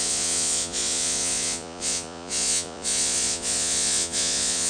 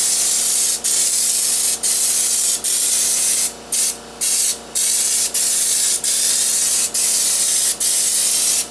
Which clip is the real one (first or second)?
second